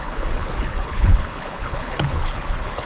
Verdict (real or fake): fake